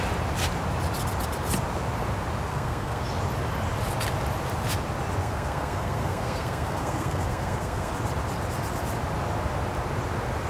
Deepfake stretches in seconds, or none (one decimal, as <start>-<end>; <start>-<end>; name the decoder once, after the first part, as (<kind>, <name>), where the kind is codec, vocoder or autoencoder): 2.5-3.0 (codec, SNAC); 5.2-7.9

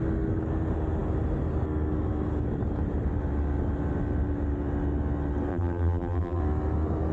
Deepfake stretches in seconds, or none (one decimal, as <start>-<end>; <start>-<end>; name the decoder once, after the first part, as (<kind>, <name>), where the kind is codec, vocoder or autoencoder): 5.5-6.4 (vocoder, BigVGAN v2)

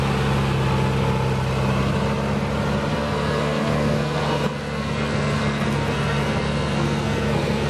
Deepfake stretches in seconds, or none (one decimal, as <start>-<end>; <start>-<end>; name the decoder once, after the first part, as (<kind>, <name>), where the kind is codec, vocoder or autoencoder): 2.9-7.7 (codec, SNAC)

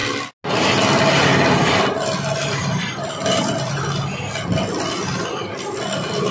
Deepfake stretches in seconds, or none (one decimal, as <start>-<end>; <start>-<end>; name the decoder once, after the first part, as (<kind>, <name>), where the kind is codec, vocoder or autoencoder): none

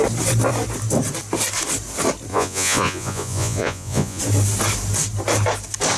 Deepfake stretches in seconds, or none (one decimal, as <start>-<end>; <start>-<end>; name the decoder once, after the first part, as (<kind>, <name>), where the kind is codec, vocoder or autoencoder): 2.3-4.2 (vocoder, Vocos)

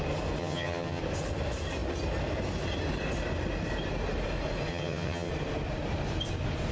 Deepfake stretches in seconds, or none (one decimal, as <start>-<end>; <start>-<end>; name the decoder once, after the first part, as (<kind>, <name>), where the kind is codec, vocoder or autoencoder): 0.4-1.0 (vocoder, HiFi-GAN); 4.7-5.3

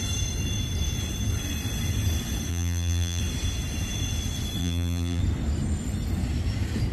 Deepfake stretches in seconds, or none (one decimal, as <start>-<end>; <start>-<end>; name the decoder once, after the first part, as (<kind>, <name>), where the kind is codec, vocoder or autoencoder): 2.5-3.2 (vocoder, BigVGAN v2); 4.6-5.2